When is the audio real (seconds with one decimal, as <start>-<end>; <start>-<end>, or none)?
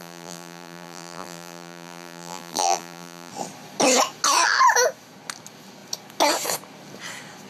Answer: 3.3-7.5